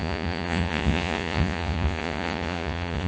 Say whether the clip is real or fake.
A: fake